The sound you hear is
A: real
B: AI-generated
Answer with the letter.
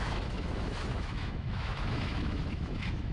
B